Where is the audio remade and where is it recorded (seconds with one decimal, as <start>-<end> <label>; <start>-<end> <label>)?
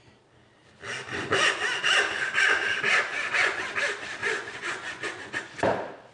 0.0-1.1 recorded; 1.1-1.8 remade; 1.8-3.1 recorded; 3.1-3.7 remade; 3.7-4.2 recorded; 4.2-5.6 remade; 5.6-6.1 recorded